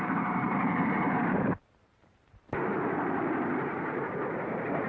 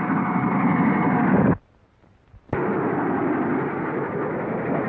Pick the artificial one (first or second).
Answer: first